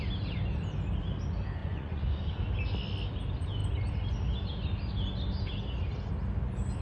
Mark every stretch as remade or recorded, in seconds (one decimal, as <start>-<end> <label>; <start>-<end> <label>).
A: 0.0-1.6 recorded; 1.6-2.3 remade; 2.3-6.8 recorded